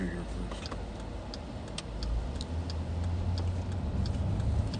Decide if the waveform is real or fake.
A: real